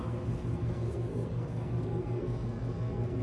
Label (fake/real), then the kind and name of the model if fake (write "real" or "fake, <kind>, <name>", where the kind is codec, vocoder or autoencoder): fake, codec, SNAC